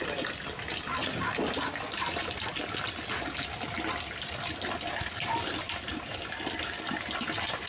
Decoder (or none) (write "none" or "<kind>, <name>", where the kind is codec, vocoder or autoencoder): none